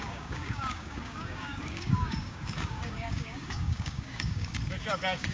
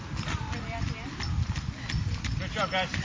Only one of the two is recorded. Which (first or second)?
second